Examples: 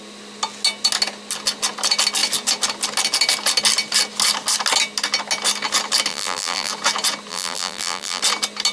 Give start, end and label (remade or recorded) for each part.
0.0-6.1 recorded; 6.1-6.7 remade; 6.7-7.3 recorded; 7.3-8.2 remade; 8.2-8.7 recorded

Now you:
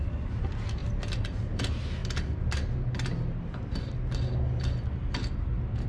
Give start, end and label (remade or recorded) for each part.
0.0-5.9 recorded

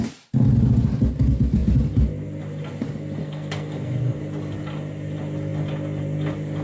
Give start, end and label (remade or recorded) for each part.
0.0-3.2 recorded; 3.2-4.2 remade; 4.2-6.6 recorded

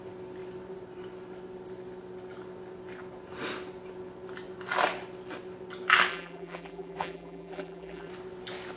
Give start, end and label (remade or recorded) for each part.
0.0-6.1 recorded; 6.1-8.1 remade; 8.1-8.8 recorded

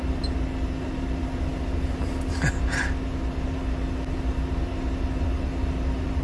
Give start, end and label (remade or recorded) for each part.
0.0-6.2 recorded